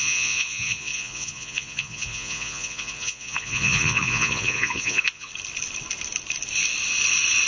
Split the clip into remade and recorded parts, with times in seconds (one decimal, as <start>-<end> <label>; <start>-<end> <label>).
0.0-5.3 remade; 5.3-7.5 recorded